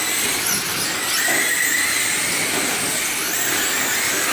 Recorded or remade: recorded